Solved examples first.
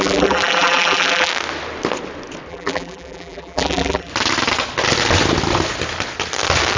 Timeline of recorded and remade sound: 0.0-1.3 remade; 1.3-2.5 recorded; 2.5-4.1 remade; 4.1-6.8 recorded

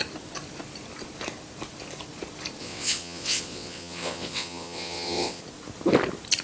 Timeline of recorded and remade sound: 0.0-2.6 recorded; 2.6-5.4 remade; 5.4-6.4 recorded

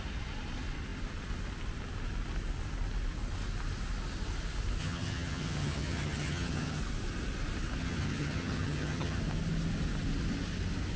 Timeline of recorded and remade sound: 0.0-4.8 recorded; 4.8-6.8 remade; 6.8-7.8 recorded; 7.8-9.2 remade; 9.2-11.0 recorded

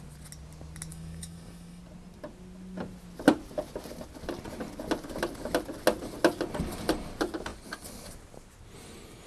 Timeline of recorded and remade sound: 0.0-0.9 recorded; 0.9-1.8 remade; 1.8-9.3 recorded

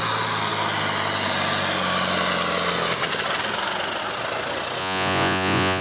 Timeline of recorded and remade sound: 0.0-4.8 recorded; 4.8-5.8 remade

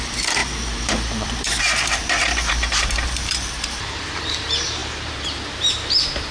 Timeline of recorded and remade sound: 0.0-6.3 remade